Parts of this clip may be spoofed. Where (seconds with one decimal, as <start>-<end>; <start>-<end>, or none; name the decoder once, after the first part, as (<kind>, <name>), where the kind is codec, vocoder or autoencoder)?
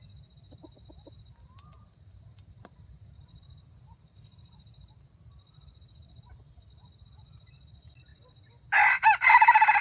none